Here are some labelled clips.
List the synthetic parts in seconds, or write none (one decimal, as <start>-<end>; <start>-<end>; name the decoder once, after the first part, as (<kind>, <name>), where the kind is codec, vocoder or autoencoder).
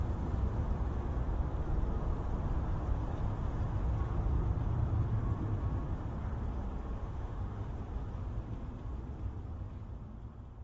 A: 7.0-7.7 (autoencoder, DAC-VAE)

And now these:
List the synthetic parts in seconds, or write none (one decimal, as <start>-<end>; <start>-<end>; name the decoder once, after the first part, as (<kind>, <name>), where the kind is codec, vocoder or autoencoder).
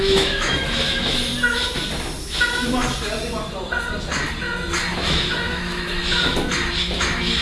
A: 0.0-1.3 (autoencoder, DAC-VAE); 2.2-2.8; 4.9-6.0; 6.8-7.4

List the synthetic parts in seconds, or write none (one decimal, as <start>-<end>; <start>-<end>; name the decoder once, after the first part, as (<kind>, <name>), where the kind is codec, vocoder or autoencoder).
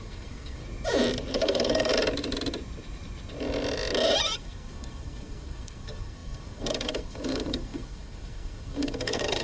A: 0.0-0.6 (codec, SNAC); 1.3-1.9; 4.4-9.4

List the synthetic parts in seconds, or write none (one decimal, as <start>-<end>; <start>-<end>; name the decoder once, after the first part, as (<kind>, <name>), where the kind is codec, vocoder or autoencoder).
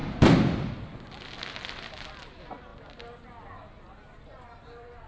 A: 0.0-0.7 (vocoder, BigVGAN v2)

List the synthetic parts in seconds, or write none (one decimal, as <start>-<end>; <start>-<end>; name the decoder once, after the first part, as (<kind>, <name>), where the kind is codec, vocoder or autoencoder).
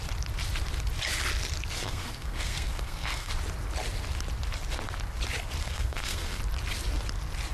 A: 1.8-3.3 (codec, SNAC); 5.6-6.4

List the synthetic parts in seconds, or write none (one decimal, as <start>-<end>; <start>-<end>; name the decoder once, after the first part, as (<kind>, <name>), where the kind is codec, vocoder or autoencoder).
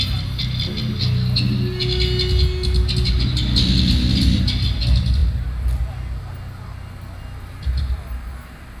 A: none